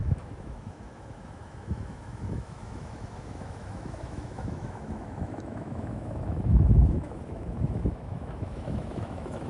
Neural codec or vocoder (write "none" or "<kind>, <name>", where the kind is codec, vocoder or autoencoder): autoencoder, DAC-VAE